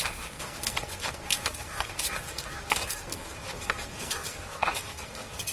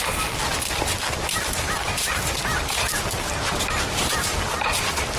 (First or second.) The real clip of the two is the second